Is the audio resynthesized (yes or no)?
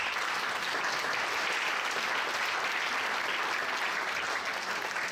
no